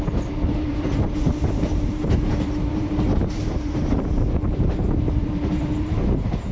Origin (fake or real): fake